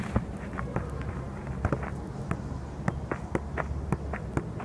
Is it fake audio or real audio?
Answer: real